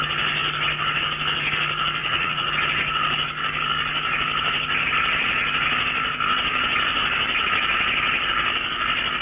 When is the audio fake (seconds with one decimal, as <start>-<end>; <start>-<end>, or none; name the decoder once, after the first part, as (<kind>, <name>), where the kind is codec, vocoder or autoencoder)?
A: 2.0-2.5 (vocoder, Vocos)